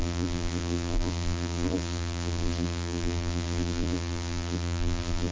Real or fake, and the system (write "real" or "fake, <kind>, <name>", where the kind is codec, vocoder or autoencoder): fake, vocoder, BigVGAN v2